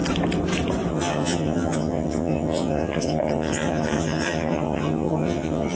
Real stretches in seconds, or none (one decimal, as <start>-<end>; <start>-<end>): 0.0-0.9